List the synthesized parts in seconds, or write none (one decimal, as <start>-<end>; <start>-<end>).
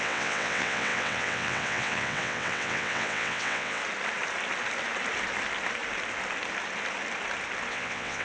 0.0-3.8; 7.7-8.2